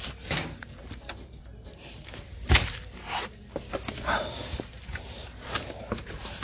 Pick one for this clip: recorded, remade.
remade